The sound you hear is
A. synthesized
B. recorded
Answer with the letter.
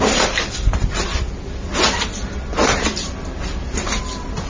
B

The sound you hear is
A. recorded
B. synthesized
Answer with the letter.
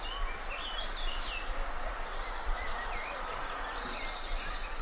A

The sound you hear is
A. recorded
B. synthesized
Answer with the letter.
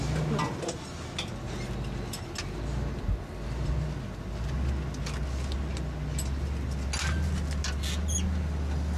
A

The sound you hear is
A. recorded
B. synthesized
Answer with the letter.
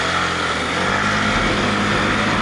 A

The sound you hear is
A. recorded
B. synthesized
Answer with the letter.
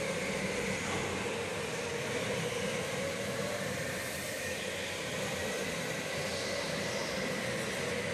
A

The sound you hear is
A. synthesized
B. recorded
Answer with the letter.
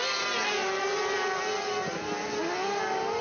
B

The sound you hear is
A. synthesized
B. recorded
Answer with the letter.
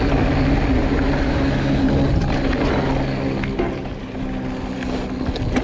B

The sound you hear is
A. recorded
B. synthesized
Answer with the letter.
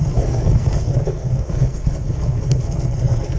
B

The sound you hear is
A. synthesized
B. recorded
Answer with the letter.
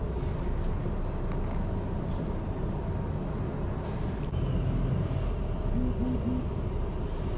B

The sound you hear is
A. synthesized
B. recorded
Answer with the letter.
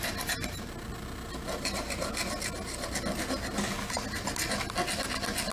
B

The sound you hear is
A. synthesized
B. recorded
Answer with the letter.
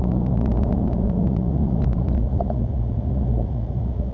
A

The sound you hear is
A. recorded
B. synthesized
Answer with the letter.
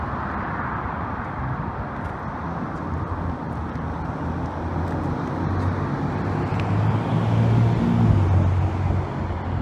A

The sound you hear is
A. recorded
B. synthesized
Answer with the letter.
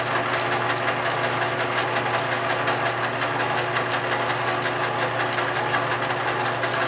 A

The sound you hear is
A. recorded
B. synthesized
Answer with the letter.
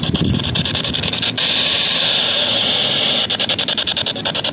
A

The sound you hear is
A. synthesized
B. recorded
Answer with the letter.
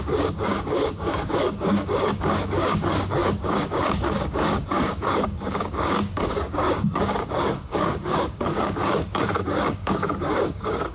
A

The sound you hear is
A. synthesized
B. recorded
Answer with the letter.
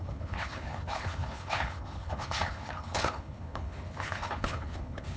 A